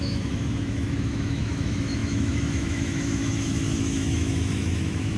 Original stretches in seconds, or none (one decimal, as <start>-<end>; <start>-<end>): none